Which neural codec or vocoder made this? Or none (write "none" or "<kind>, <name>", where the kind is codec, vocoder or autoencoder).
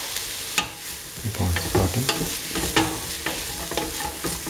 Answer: none